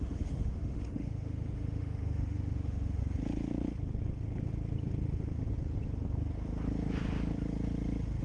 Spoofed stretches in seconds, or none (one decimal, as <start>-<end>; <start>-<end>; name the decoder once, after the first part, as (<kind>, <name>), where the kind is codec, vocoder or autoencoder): 0.0-3.0 (autoencoder, DAC-VAE)